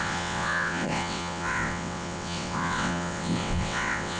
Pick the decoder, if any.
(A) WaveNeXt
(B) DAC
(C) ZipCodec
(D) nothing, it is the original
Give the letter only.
A